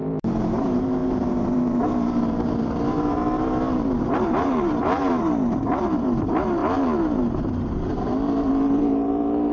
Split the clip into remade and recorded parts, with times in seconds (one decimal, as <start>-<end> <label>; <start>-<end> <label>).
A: 0.0-9.5 remade